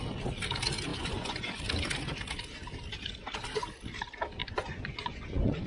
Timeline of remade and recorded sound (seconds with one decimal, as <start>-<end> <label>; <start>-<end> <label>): 0.0-0.9 recorded; 0.9-1.6 remade; 1.6-4.4 recorded; 4.4-5.7 remade